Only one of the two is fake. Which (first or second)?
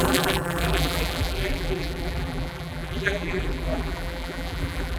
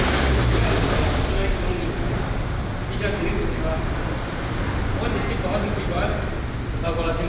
first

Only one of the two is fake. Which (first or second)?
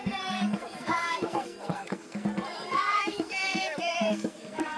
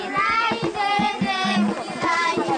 first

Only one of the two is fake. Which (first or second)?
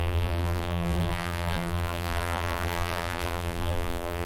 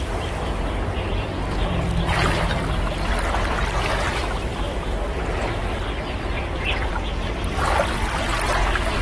first